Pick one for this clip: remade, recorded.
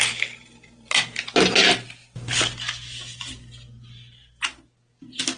recorded